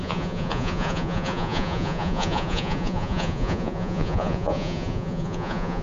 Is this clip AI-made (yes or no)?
yes